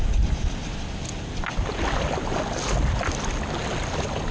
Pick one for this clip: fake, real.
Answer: real